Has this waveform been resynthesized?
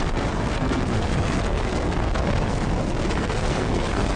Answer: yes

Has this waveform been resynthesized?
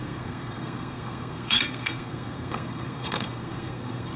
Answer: yes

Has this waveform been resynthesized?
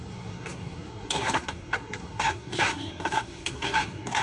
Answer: yes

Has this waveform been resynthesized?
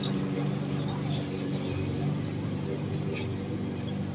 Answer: no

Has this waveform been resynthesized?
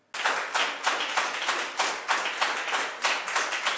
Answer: no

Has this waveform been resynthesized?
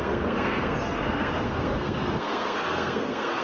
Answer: yes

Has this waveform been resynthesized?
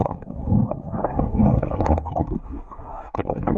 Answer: yes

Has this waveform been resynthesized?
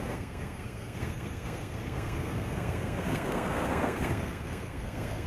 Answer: yes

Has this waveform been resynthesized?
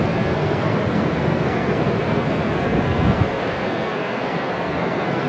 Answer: yes